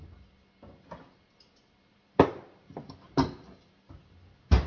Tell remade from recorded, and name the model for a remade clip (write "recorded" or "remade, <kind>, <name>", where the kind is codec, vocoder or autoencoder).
recorded